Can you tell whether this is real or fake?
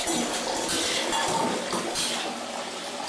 real